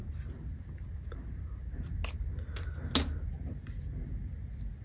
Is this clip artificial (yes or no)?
no